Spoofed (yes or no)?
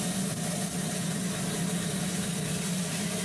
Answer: no